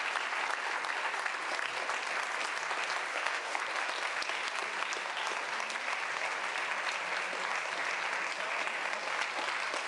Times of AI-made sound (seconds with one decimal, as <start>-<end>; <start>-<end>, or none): 3.1-3.6

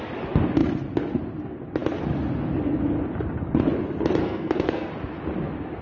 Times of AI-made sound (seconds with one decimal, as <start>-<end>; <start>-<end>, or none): 4.2-4.9

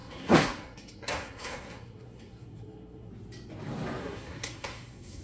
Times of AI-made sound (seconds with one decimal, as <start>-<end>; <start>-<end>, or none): 0.0-3.1; 4.0-5.2

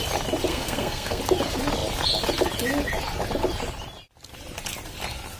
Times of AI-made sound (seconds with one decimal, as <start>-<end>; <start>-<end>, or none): 0.5-1.2

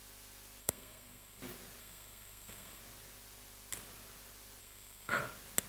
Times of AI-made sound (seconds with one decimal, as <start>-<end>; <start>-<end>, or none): 0.6-1.4; 1.8-2.8; 4.6-5.2

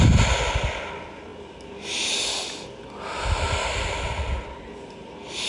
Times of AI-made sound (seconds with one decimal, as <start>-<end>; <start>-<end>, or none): none

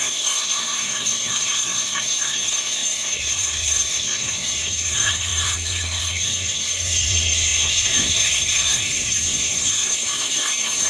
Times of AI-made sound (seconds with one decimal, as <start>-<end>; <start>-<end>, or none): 0.0-10.9

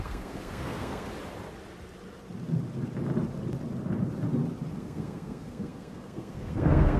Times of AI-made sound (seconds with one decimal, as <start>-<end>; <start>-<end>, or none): 0.0-1.1; 4.8-7.0